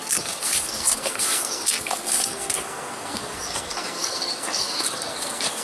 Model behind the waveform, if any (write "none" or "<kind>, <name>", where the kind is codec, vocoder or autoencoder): codec, SNAC